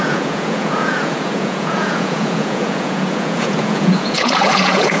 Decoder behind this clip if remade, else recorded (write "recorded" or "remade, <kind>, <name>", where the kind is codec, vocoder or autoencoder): remade, vocoder, Vocos